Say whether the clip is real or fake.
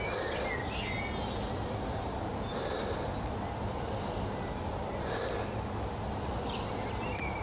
real